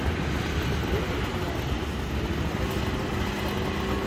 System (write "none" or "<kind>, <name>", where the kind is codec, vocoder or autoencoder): none